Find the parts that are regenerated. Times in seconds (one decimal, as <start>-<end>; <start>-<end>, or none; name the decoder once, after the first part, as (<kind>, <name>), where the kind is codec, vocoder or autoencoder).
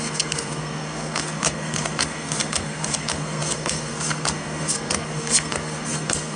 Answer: 0.0-6.4 (codec, SNAC)